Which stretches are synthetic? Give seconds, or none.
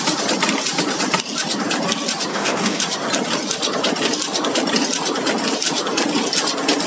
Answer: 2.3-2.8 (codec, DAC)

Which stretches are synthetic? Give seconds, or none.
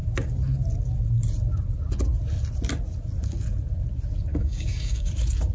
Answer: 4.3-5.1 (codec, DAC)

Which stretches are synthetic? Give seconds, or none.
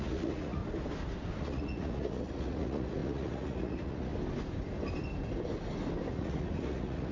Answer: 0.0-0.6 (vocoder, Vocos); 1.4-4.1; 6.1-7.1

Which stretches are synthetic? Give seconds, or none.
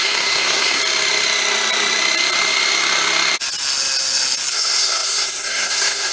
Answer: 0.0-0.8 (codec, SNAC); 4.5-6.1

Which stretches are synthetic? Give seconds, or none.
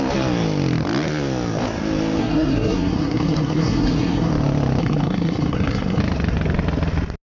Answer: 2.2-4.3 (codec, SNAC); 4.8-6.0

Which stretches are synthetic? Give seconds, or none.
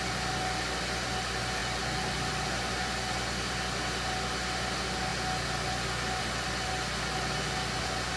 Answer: none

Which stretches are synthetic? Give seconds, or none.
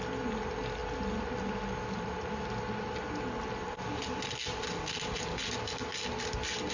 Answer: none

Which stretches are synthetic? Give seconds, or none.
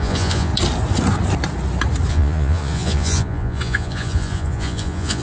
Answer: 0.0-0.5 (vocoder, Vocos); 2.1-5.2